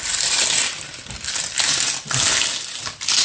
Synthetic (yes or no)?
no